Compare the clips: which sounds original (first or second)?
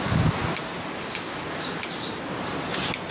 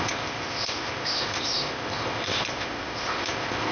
first